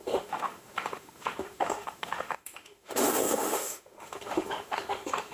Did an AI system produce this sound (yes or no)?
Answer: yes